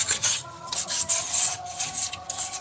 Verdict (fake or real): fake